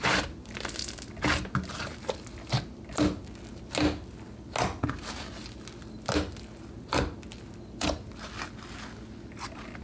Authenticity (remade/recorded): recorded